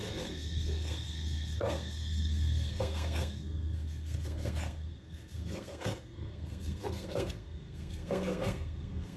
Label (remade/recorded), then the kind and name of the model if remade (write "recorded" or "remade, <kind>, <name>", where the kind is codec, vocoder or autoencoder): remade, codec, SNAC